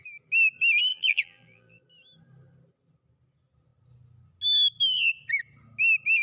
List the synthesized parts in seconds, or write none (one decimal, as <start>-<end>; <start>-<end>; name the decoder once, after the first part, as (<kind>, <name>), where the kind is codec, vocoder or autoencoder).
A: 0.9-1.8 (vocoder, BigVGAN v2)